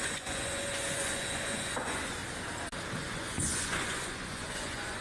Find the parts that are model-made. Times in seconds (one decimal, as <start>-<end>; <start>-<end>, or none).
0.0-2.2; 3.0-5.0

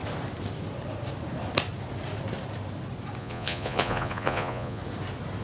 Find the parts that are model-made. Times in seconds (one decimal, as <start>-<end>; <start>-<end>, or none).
3.2-4.8

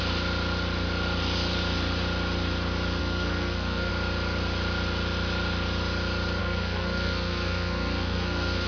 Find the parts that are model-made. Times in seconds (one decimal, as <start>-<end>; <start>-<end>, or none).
3.0-3.9; 6.4-8.7

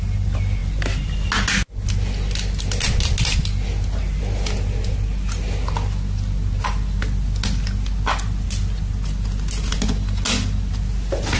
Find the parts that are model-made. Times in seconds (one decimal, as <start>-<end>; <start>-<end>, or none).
none

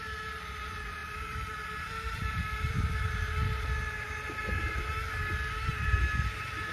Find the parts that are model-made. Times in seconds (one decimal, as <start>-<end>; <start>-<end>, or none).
1.0-3.9

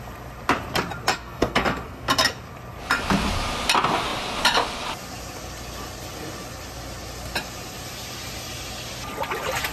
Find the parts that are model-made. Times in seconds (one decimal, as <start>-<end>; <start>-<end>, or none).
1.1-2.1